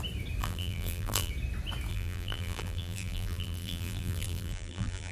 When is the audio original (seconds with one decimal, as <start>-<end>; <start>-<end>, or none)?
0.0-0.4; 1.3-1.9